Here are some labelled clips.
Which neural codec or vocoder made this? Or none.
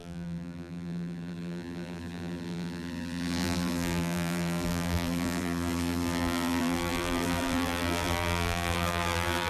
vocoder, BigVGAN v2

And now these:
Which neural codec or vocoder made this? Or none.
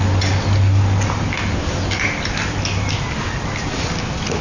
none